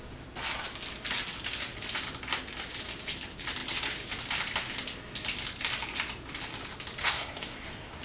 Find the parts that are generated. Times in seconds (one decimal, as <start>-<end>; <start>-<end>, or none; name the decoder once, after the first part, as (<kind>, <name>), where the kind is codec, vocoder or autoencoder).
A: 7.0-8.0 (codec, SNAC)